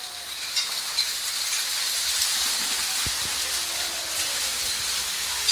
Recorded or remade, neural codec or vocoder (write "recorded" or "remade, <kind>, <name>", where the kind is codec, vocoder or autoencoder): recorded